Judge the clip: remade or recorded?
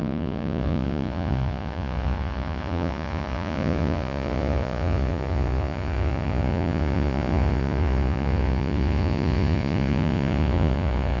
remade